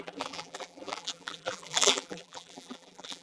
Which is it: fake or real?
fake